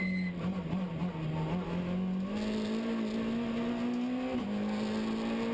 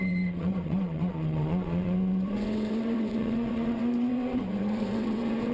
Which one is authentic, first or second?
first